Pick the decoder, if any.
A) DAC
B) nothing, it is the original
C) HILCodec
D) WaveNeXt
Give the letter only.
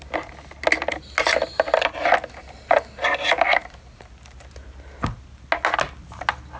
B